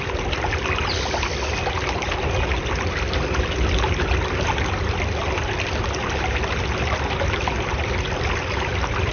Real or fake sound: real